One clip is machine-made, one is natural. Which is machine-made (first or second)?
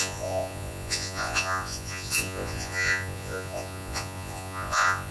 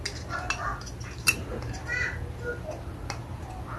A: first